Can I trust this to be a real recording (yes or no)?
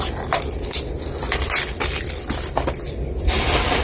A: no